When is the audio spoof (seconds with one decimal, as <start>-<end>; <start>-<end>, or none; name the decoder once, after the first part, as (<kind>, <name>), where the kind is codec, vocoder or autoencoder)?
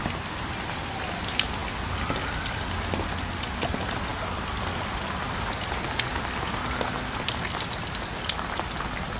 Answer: none